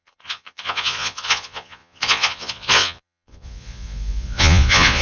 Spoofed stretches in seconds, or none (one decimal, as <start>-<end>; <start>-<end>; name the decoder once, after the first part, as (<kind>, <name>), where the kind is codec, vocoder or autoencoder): 0.0-5.0 (vocoder, Vocos)